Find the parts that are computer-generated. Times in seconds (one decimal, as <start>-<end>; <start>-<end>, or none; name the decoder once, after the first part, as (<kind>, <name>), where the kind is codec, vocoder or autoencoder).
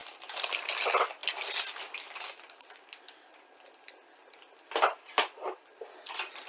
none